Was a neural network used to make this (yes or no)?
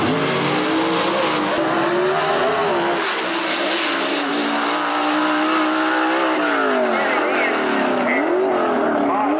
no